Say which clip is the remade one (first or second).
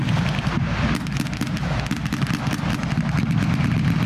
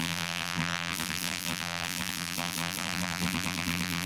second